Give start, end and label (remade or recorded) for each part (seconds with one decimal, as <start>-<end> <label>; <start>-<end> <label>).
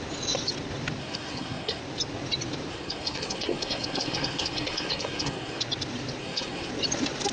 0.0-1.0 recorded; 1.0-1.8 remade; 1.8-2.7 recorded; 2.7-5.6 remade; 5.6-6.2 recorded; 6.2-6.7 remade; 6.7-7.3 recorded